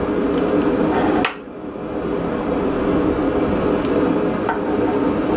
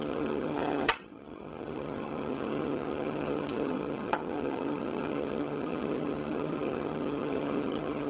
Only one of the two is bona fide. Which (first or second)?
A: first